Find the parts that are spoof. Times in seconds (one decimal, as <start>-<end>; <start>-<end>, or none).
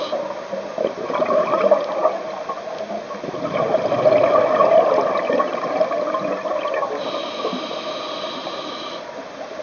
none